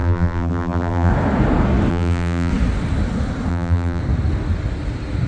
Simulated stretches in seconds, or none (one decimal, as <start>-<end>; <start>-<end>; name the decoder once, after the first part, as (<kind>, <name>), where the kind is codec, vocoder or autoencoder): 0.0-1.1 (vocoder, BigVGAN v2); 1.9-2.5; 3.5-4.0